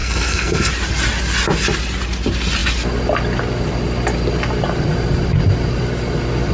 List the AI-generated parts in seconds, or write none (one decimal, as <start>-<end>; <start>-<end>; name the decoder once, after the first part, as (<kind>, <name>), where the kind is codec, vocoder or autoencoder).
0.0-0.7 (codec, SNAC)